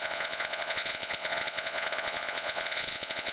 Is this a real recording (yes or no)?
no